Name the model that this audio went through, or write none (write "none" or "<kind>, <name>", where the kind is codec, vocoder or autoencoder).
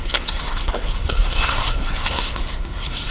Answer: codec, SNAC